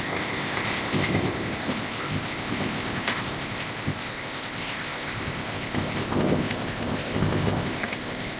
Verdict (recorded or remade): remade